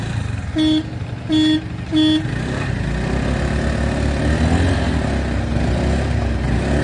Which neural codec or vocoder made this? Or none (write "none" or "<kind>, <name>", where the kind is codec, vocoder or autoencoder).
none